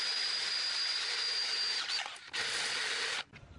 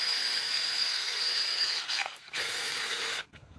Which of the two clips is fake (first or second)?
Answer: second